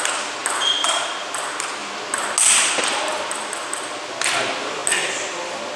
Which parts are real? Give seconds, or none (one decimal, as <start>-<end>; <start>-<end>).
0.0-5.8